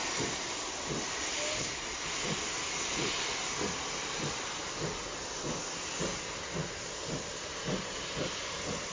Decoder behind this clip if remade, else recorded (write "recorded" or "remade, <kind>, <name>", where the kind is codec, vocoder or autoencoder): recorded